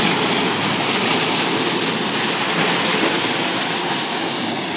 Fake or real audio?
real